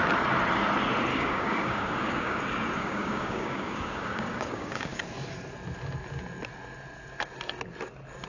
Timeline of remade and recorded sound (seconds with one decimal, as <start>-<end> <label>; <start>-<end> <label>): 0.0-1.1 recorded; 1.1-2.4 remade; 2.4-2.8 recorded; 2.8-5.0 remade; 5.0-8.3 recorded